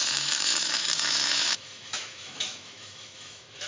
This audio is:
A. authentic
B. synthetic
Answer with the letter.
B